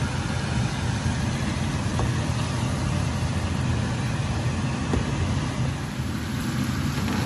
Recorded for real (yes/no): yes